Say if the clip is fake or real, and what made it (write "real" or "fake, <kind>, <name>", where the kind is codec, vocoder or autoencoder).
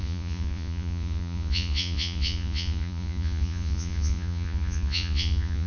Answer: fake, vocoder, Vocos